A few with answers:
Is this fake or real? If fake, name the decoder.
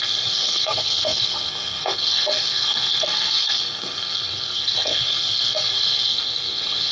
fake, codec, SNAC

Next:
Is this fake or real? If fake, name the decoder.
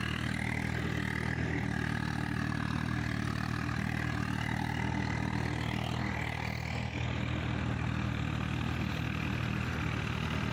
real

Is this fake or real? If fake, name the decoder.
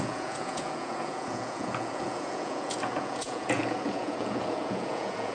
fake, vocoder, Vocos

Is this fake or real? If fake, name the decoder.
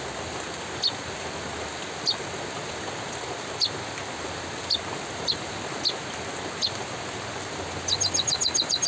real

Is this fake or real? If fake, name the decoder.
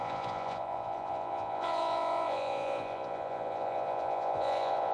fake, vocoder, Vocos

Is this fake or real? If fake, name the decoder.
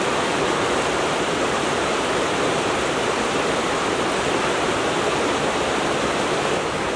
fake, vocoder, BigVGAN v2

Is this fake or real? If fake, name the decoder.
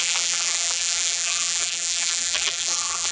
fake, vocoder, BigVGAN v2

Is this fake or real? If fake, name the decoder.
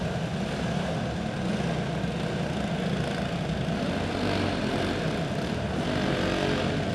real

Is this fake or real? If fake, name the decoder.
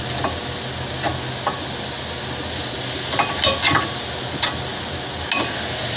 real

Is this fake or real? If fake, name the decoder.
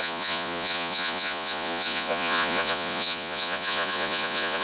fake, vocoder, Vocos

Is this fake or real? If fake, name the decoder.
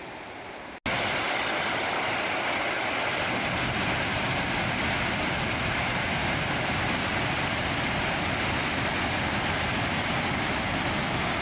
real